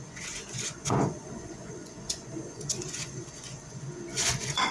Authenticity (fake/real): fake